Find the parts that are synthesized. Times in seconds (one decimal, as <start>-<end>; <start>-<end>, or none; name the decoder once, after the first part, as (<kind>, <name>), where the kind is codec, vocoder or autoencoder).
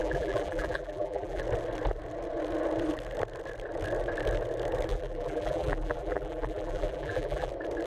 0.0-1.4 (vocoder, BigVGAN v2); 4.9-7.5